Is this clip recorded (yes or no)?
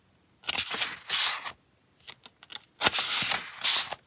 yes